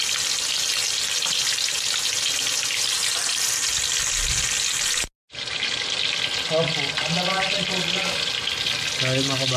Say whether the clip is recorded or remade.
recorded